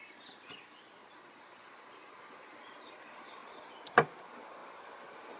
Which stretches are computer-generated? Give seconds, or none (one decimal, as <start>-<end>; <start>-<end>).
none